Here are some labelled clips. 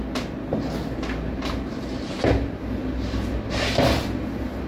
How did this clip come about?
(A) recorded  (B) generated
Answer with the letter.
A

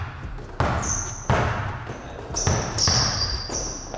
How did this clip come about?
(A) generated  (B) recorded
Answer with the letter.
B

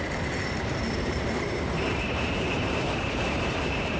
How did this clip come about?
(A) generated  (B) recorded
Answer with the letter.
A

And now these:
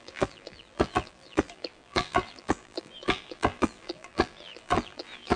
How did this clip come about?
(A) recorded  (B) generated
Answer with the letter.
B